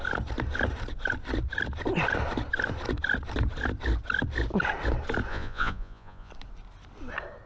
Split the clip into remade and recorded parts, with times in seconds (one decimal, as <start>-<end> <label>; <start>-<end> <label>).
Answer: 0.0-5.3 recorded; 5.3-6.3 remade; 6.3-7.5 recorded